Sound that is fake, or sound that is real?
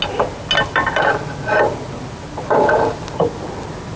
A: real